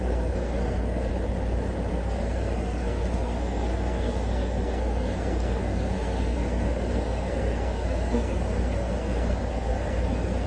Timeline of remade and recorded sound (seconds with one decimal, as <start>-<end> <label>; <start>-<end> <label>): 0.0-1.1 remade; 1.1-1.9 recorded; 1.9-10.5 remade